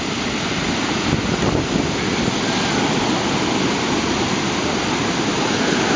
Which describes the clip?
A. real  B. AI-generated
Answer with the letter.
A